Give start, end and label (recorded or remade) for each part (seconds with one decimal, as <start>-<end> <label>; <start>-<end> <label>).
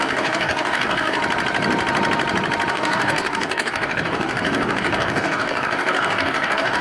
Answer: 0.0-1.2 remade; 1.2-2.7 recorded; 2.7-6.8 remade